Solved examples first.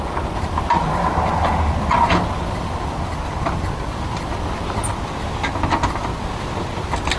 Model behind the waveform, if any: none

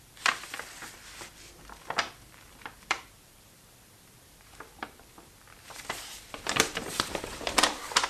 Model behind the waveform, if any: vocoder, BigVGAN v2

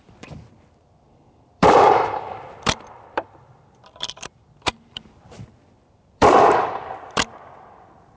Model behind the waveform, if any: vocoder, BigVGAN v2